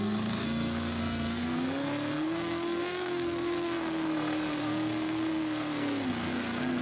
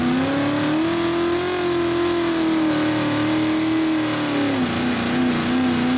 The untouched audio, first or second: second